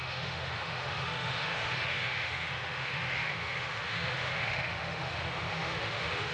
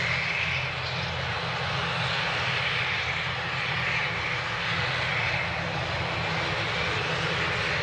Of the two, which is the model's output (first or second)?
first